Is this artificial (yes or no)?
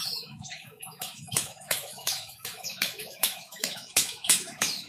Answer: yes